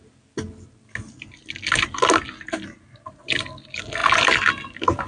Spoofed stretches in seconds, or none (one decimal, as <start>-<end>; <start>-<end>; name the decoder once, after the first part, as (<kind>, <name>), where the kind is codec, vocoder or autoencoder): none